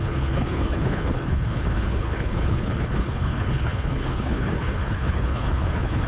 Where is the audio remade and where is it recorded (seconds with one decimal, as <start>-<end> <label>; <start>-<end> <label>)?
0.0-6.1 remade